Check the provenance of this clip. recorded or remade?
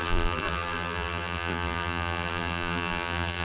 remade